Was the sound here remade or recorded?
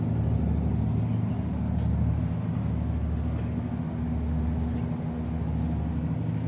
recorded